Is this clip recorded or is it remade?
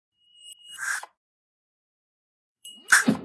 remade